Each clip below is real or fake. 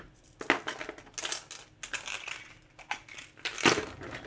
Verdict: real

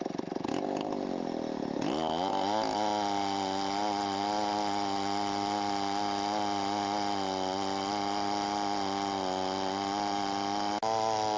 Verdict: real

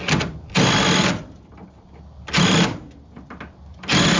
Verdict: real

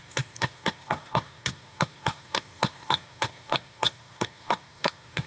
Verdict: fake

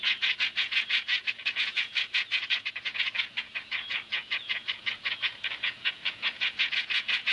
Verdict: fake